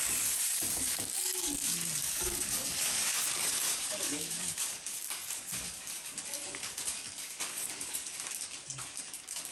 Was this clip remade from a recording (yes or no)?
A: yes